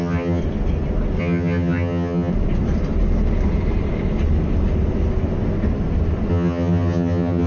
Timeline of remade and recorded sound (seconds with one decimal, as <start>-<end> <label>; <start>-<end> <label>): 0.0-0.4 remade; 0.4-1.2 recorded; 1.2-2.3 remade; 2.3-6.3 recorded; 6.3-7.5 remade